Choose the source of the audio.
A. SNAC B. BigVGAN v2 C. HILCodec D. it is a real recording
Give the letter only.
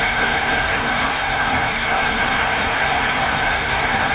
A